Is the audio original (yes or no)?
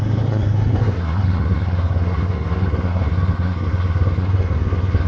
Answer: no